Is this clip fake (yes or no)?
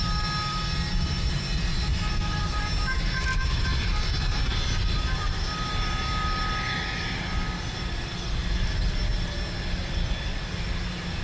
no